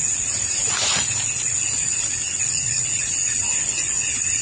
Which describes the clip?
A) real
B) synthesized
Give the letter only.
B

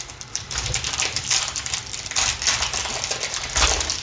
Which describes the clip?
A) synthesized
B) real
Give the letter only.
A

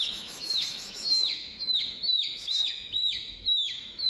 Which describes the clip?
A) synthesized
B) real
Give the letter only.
A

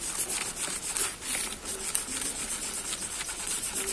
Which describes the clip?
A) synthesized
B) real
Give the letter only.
B